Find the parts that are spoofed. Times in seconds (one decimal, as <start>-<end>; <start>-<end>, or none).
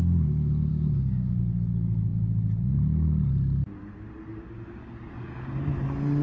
0.7-1.4